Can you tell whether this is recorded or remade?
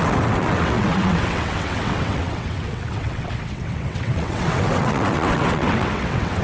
remade